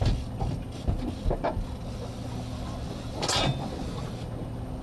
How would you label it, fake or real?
real